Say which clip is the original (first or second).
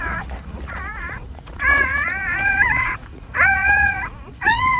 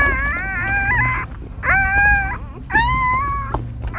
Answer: second